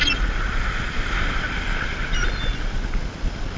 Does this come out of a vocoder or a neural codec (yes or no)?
no